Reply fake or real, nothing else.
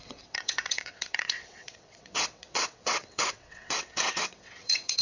fake